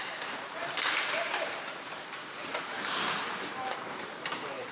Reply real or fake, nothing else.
fake